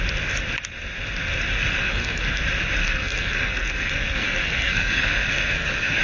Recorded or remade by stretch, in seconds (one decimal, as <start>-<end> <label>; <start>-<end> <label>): 0.0-1.8 recorded; 1.8-2.4 remade; 2.4-2.8 recorded; 2.8-6.0 remade